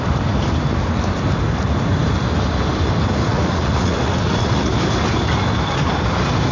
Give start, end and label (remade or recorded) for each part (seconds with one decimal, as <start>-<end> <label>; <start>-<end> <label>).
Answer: 0.0-3.3 recorded; 3.3-4.7 remade; 4.7-6.5 recorded